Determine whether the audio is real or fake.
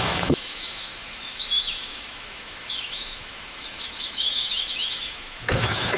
fake